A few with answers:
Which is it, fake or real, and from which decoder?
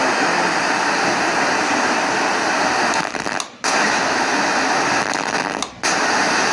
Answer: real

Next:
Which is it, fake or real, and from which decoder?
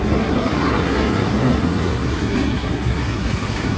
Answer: fake, codec, SNAC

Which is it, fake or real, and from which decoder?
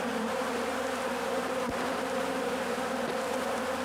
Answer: real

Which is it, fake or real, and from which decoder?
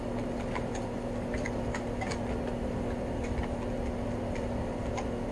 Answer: real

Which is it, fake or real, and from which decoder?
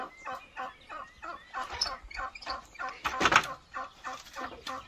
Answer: real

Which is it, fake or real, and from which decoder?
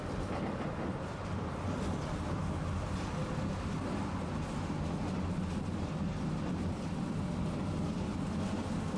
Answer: real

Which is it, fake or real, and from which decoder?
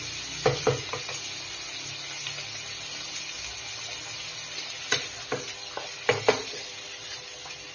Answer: real